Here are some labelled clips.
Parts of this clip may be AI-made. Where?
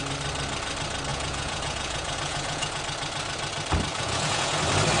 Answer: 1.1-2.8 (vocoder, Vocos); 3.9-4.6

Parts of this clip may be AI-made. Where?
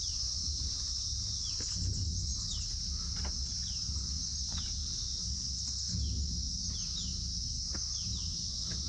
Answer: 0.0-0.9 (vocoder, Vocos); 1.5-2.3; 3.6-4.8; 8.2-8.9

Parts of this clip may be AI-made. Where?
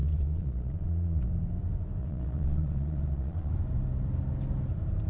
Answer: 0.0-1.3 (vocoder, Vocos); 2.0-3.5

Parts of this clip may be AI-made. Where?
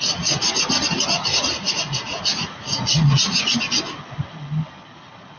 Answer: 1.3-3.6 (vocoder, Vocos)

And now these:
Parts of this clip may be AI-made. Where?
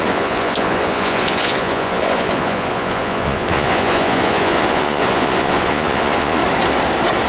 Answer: 0.0-6.4 (vocoder, Vocos)